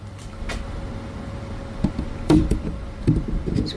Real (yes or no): no